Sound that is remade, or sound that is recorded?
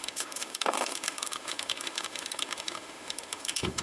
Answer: remade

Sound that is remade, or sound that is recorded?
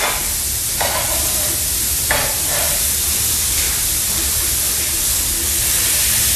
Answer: recorded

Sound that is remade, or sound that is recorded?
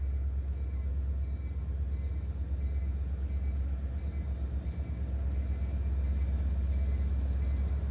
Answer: recorded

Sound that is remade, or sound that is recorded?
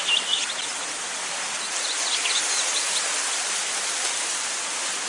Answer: recorded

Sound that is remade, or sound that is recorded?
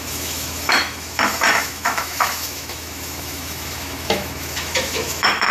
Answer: remade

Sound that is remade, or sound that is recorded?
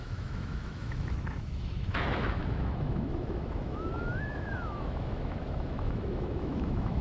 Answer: remade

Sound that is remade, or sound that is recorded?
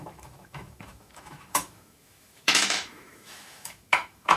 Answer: remade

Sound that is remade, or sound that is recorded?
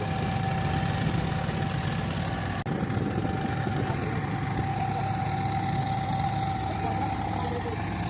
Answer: recorded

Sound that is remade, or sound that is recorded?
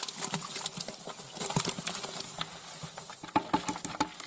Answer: recorded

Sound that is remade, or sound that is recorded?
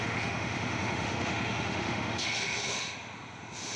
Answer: remade